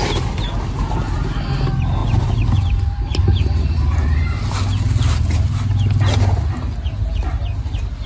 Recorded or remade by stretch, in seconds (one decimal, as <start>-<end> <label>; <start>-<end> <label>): 0.0-2.0 recorded; 2.0-4.4 remade; 4.4-8.1 recorded